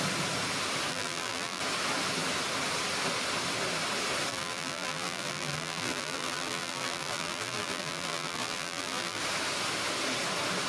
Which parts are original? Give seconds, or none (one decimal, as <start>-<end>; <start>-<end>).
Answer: 0.0-0.9; 1.6-4.3; 9.2-10.7